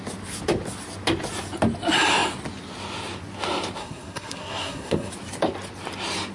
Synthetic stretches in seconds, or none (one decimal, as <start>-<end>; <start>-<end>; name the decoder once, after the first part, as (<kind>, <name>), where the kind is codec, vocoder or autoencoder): 3.8-5.1 (codec, SNAC)